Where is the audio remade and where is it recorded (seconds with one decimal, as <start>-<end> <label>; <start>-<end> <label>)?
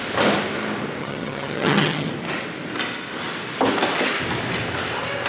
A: 0.0-1.0 recorded; 1.0-2.1 remade; 2.1-5.3 recorded